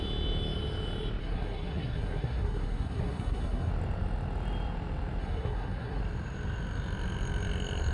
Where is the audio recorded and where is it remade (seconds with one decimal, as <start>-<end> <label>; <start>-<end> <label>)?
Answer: 0.0-1.2 recorded; 1.2-3.7 remade; 3.7-5.2 recorded; 5.2-6.0 remade; 6.0-7.9 recorded